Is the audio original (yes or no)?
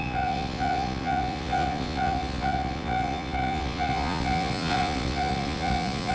no